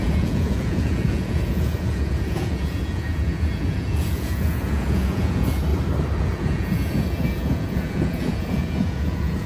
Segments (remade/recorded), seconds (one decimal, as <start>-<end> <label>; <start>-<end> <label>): 0.0-5.7 remade; 5.7-6.2 recorded; 6.2-9.5 remade